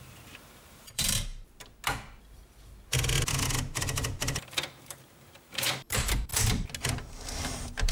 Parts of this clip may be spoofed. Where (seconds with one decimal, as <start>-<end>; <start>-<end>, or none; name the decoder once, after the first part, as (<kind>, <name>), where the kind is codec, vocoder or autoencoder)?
0.0-1.3 (vocoder, BigVGAN v2); 3.6-6.3; 6.9-7.9